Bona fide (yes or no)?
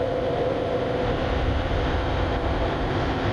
yes